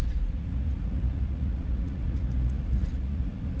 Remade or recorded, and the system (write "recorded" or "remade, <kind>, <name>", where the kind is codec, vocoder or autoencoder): remade, vocoder, Vocos